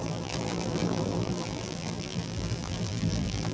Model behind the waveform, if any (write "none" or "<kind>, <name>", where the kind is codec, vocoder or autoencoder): vocoder, BigVGAN v2